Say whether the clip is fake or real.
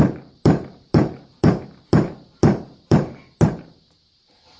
fake